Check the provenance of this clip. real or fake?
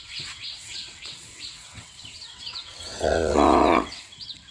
fake